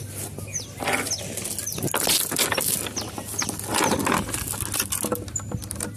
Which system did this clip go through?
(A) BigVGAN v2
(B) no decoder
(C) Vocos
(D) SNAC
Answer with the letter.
B